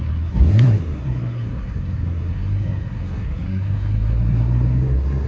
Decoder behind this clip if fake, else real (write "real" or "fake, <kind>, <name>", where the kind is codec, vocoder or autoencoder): fake, codec, SNAC